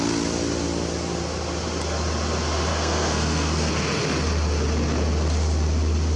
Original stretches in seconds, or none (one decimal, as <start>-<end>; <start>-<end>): 0.0-2.7; 3.7-6.2